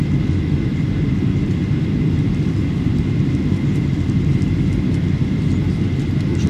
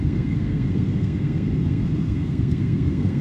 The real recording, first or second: first